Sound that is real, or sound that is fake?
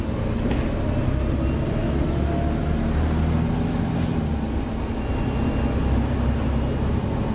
real